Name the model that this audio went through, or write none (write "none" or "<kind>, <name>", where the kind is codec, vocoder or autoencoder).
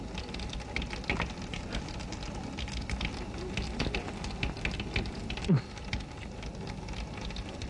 none